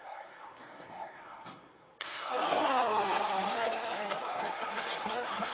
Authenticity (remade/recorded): remade